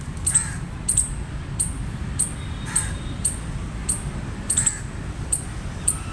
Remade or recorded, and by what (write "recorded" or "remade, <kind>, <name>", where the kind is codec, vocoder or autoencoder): recorded